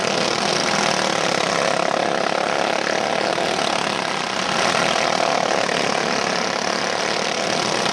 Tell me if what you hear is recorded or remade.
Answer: recorded